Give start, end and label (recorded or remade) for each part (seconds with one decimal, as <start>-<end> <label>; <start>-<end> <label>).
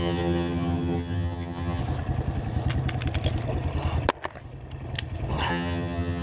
0.0-1.8 remade; 1.8-5.5 recorded; 5.5-6.2 remade